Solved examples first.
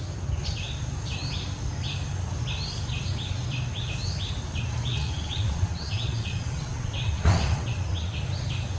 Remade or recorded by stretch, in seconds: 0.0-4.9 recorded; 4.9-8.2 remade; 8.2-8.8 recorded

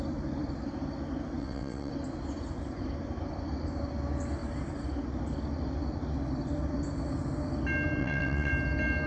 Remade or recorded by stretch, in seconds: 0.0-1.4 recorded; 1.4-1.9 remade; 1.9-8.0 recorded; 8.0-8.5 remade; 8.5-9.1 recorded

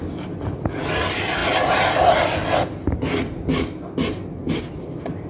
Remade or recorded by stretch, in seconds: 0.0-5.3 recorded

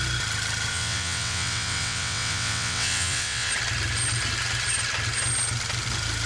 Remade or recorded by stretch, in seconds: 0.0-0.7 recorded; 0.7-3.5 remade; 3.5-6.3 recorded